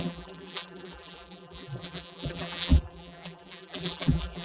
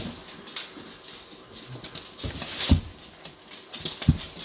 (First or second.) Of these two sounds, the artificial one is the first